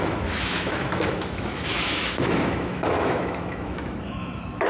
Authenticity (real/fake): fake